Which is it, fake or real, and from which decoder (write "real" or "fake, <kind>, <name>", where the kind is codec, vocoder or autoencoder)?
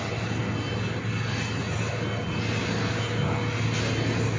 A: real